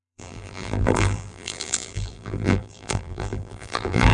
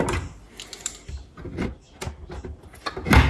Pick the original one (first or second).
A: second